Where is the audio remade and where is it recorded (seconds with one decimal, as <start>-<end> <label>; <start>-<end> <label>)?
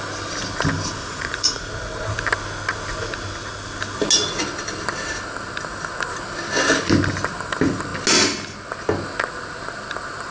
0.0-1.0 recorded; 1.0-1.7 remade; 1.7-10.3 recorded